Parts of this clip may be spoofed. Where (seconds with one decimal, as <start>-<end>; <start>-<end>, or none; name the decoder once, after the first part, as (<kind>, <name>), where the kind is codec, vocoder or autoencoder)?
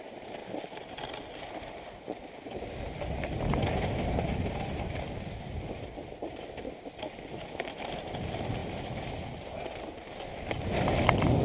none